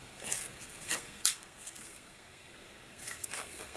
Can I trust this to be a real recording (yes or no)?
no